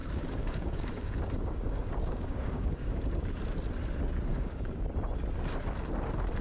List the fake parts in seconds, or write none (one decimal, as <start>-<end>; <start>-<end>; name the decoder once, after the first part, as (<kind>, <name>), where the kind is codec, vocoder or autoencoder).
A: 0.0-2.9 (codec, DAC); 4.3-4.8